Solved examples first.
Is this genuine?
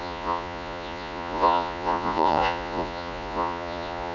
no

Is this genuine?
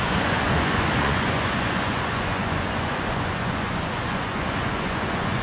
no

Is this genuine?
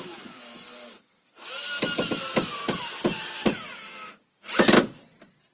yes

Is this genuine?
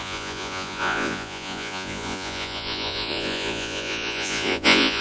no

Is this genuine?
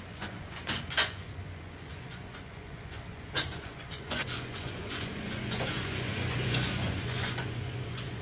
no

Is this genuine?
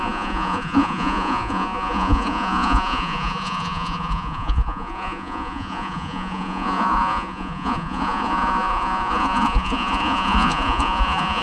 no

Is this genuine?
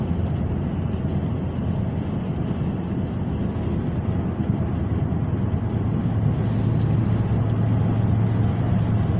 yes